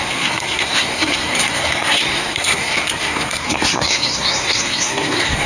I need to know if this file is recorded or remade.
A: remade